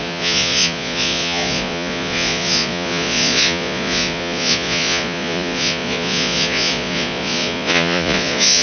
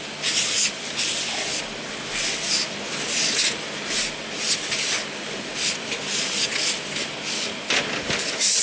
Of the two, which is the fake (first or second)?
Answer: first